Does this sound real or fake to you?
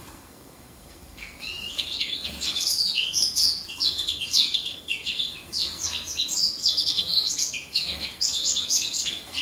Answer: fake